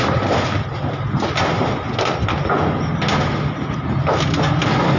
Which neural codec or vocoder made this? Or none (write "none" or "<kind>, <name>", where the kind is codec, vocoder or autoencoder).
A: none